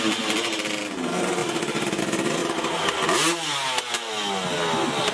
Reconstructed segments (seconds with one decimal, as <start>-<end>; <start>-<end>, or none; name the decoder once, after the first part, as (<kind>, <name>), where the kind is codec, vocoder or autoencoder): none

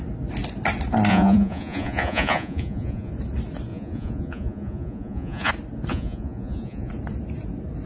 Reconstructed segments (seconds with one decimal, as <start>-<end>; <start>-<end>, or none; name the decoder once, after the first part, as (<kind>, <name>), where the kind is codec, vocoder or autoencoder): 1.1-3.1 (vocoder, Vocos); 3.7-5.5; 5.9-6.9

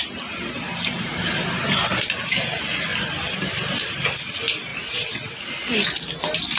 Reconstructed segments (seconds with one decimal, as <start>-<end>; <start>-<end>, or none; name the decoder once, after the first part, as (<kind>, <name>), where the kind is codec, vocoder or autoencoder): 4.7-5.3 (vocoder, WaveNeXt)

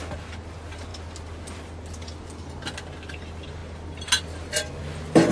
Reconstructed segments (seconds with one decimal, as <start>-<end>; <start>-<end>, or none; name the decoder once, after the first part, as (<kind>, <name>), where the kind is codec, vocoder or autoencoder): none

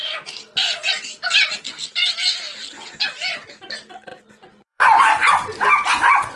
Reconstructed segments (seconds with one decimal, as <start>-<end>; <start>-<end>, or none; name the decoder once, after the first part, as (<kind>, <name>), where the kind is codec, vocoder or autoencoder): 4.1-5.3 (vocoder, Vocos)